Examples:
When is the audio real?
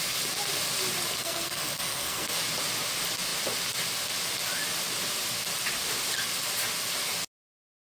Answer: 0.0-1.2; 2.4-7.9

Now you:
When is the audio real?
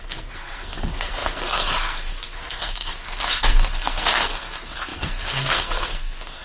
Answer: none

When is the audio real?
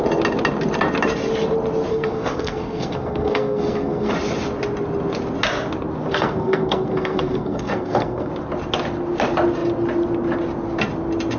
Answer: 0.0-1.9; 4.1-6.1; 8.3-11.4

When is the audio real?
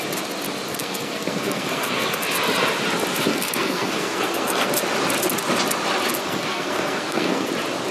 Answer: 0.0-0.7; 2.2-3.3; 4.7-6.2; 7.5-7.9